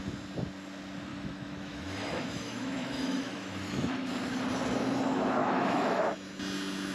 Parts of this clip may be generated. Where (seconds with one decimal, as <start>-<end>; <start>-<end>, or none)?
1.1-4.1; 5.4-6.0